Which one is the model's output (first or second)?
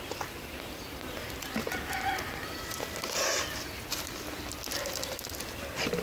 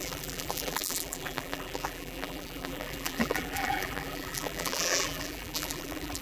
second